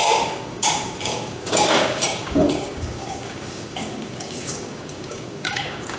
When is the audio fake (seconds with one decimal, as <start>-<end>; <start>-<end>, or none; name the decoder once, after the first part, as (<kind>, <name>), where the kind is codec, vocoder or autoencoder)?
0.0-6.0 (codec, DAC)